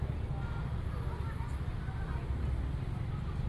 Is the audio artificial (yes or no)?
no